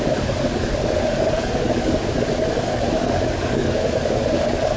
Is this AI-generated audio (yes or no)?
yes